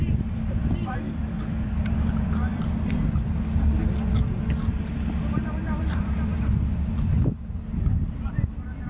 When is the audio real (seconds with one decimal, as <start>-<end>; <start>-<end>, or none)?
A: 0.0-2.5; 3.2-4.7; 8.0-8.9